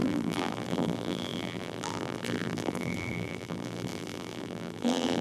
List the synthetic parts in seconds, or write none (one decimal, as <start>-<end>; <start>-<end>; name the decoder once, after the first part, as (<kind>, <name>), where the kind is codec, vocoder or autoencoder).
0.0-5.2 (vocoder, BigVGAN v2)